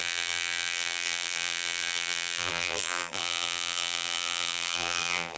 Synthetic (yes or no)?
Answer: yes